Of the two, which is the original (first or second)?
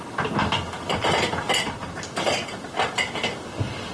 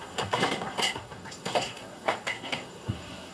first